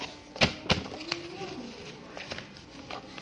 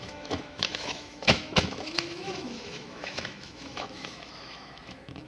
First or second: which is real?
first